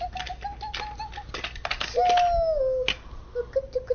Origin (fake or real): real